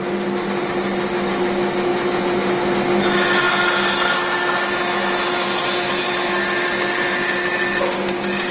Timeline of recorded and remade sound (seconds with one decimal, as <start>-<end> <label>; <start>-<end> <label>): 0.0-8.5 recorded